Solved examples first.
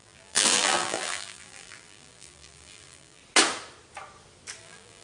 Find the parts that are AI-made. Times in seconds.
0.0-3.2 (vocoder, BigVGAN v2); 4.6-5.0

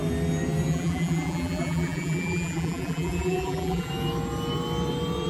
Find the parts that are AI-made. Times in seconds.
0.7-3.9 (vocoder, BigVGAN v2)

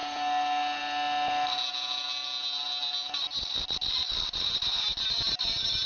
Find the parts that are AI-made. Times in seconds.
none

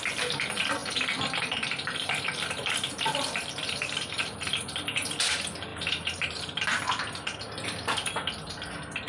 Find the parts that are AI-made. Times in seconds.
0.8-5.1 (vocoder, BigVGAN v2); 5.7-6.8

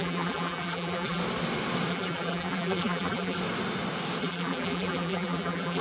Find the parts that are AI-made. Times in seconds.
0.0-1.2 (vocoder, BigVGAN v2); 1.9-3.4; 4.2-5.8

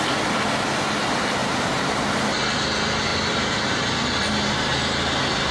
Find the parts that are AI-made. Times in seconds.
1.4-2.2 (vocoder, BigVGAN v2); 3.1-3.7